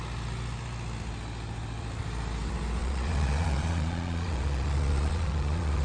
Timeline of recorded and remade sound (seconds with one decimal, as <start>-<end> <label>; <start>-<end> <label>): 0.0-2.8 recorded; 2.8-5.8 remade

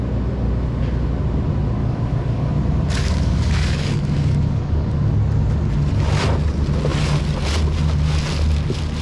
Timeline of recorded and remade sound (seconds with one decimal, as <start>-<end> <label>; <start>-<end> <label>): 0.0-1.8 recorded; 1.8-2.5 remade; 2.5-3.0 recorded; 3.0-5.2 remade; 5.2-9.0 recorded

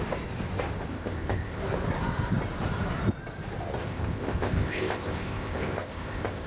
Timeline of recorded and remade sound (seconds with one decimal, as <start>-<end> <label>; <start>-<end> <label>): 0.0-0.9 recorded; 0.9-1.6 remade; 1.6-3.8 recorded; 3.8-6.5 remade

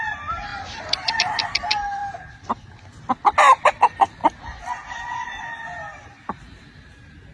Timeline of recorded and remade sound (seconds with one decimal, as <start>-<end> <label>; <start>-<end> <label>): 0.0-2.0 recorded; 2.0-2.7 remade; 2.7-7.3 recorded

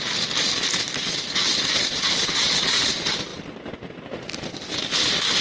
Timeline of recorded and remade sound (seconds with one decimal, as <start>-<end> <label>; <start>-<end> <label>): 0.0-2.2 recorded; 2.2-2.8 remade; 2.8-5.4 recorded

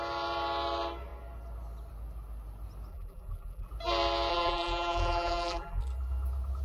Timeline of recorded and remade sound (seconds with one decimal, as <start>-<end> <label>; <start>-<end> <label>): 0.0-2.9 recorded; 2.9-3.7 remade; 3.7-4.3 recorded; 4.3-5.8 remade; 5.8-6.6 recorded